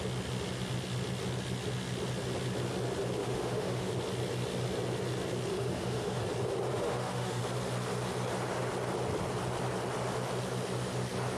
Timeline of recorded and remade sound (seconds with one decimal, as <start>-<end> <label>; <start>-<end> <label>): 0.0-3.2 recorded; 3.2-3.9 remade; 3.9-5.5 recorded; 5.5-6.2 remade; 6.2-6.7 recorded; 6.7-7.4 remade; 7.4-11.4 recorded